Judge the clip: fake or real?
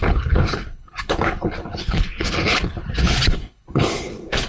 fake